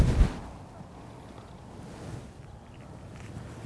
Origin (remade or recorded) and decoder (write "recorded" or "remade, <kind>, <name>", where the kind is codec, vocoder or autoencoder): recorded